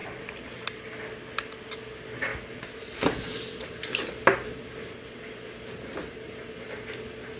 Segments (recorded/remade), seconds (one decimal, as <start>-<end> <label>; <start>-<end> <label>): 0.0-1.5 recorded; 1.5-2.3 remade; 2.3-6.7 recorded; 6.7-7.4 remade